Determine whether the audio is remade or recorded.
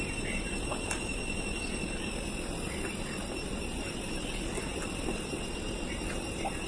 recorded